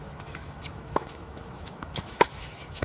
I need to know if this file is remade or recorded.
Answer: remade